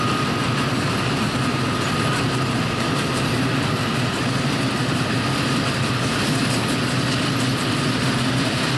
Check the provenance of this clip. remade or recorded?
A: recorded